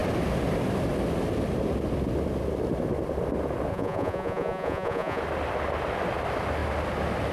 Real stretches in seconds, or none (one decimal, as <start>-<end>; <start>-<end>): 0.0-3.7; 5.2-7.3